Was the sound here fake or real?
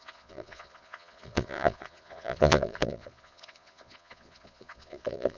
fake